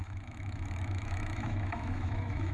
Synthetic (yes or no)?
yes